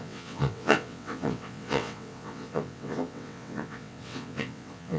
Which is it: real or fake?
fake